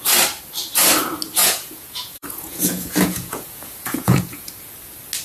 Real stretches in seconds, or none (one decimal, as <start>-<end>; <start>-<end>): 0.0-1.4; 4.5-5.2